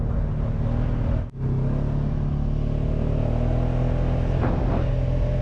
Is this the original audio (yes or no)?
yes